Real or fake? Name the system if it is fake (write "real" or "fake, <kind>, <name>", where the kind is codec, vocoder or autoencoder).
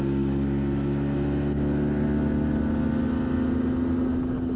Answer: real